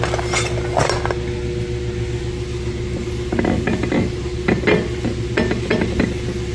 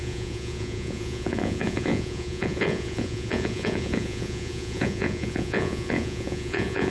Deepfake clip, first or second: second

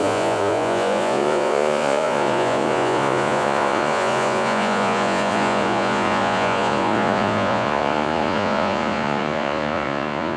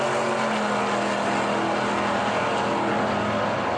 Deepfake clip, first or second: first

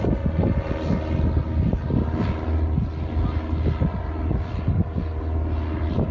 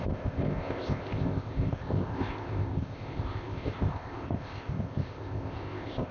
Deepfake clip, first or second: second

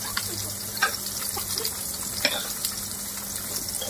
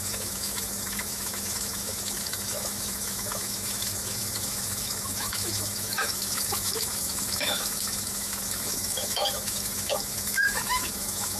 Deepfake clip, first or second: second